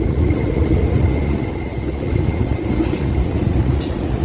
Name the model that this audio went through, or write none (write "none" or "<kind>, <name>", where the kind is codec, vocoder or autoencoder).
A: vocoder, Vocos